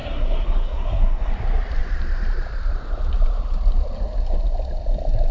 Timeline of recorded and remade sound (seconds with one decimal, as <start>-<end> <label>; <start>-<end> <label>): 0.0-1.3 remade; 1.3-5.3 recorded